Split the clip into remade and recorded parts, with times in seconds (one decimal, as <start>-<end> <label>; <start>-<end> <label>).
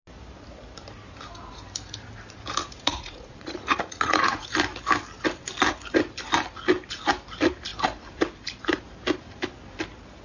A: 0.0-2.6 recorded; 2.6-4.5 remade; 4.5-10.2 recorded